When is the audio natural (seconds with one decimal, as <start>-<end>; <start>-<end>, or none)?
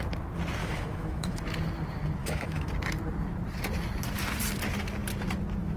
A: 0.0-0.6; 1.4-2.2; 2.7-5.8